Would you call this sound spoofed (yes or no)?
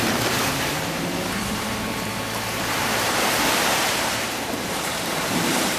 yes